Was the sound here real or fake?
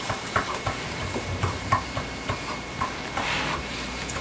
fake